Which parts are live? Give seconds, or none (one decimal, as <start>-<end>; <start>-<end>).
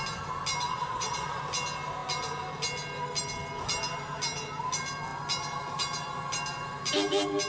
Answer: 0.0-0.7; 1.4-7.5